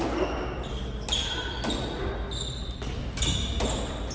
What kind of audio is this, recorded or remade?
recorded